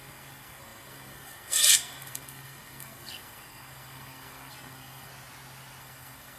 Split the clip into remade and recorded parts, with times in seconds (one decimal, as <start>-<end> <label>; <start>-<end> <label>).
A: 0.0-5.1 remade; 5.1-5.8 recorded; 5.8-6.4 remade